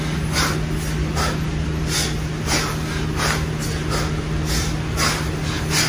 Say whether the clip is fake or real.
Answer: real